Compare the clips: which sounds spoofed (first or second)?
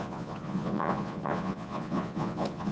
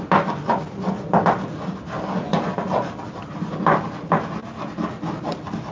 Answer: first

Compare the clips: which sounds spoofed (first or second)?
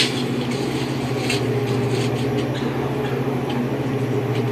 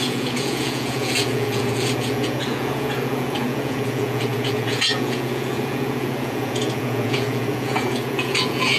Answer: second